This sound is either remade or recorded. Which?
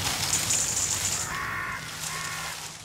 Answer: remade